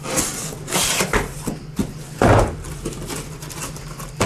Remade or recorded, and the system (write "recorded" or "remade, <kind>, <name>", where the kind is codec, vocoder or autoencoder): recorded